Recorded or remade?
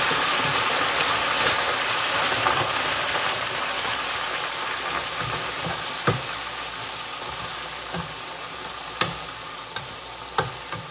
recorded